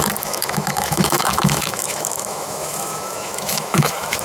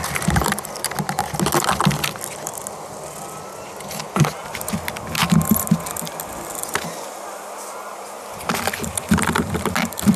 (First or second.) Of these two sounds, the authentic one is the second